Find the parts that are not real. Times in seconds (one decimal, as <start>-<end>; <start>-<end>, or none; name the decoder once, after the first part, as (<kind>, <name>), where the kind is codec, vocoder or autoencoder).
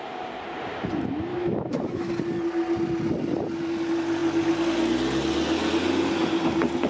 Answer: 1.3-2.1 (autoencoder, DAC-VAE)